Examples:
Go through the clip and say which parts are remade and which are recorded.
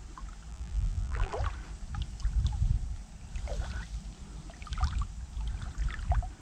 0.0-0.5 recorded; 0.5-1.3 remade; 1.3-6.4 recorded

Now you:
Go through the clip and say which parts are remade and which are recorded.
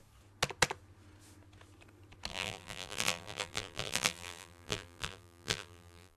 0.0-2.3 recorded; 2.3-6.2 remade